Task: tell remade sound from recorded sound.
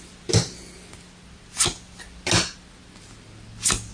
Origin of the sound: recorded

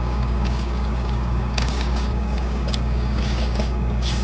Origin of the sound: remade